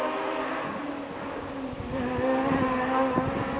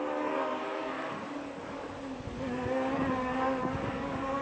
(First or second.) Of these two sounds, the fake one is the second